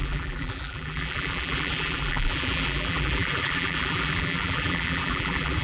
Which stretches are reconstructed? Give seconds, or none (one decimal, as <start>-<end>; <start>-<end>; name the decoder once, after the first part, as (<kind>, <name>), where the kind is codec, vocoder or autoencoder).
0.0-5.6 (vocoder, BigVGAN v2)